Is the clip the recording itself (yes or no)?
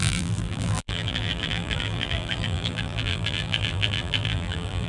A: no